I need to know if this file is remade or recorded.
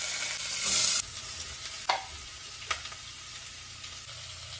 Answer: recorded